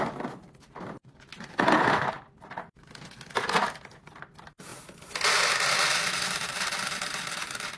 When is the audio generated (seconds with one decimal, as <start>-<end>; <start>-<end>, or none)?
none